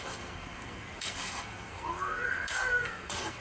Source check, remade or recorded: remade